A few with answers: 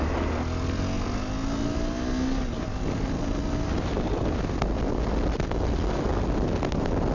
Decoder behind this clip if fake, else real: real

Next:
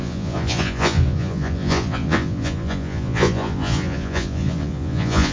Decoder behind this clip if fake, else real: fake, vocoder, Vocos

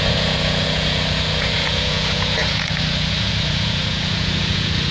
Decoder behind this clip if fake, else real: fake, vocoder, Vocos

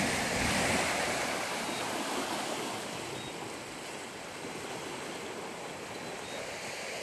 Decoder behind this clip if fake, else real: real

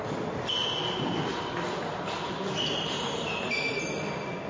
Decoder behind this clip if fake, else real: real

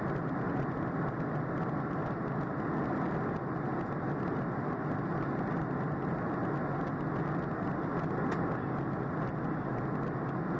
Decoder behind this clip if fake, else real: real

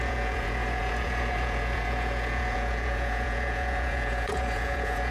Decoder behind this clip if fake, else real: fake, vocoder, Vocos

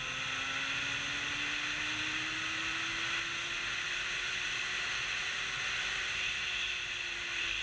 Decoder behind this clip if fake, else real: real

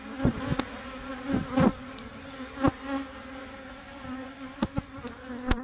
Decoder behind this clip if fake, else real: real